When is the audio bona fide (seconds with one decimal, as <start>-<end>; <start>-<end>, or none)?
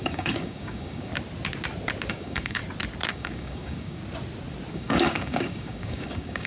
1.1-2.1; 2.6-3.1; 4.0-4.7